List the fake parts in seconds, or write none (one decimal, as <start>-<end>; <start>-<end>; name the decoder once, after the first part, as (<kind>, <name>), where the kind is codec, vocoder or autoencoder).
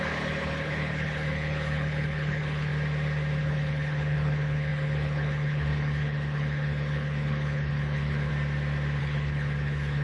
0.0-2.7 (codec, HILCodec); 3.4-8.3; 9.0-10.0